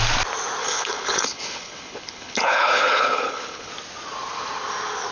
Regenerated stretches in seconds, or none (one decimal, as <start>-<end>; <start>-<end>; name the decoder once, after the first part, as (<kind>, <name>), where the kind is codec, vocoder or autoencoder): 0.6-3.7 (codec, HILCodec)